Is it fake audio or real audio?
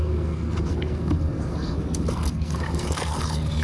fake